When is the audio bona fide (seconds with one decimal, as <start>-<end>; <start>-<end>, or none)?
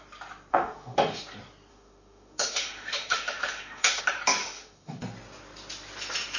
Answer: 0.0-0.5; 1.2-1.7; 4.0-4.4; 5.0-6.4